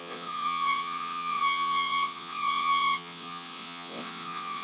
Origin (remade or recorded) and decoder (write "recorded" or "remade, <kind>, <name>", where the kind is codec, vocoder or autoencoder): remade, vocoder, WaveNeXt